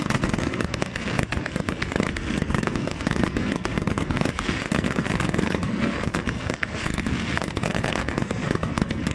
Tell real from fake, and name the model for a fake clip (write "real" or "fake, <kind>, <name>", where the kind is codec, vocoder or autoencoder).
fake, codec, SNAC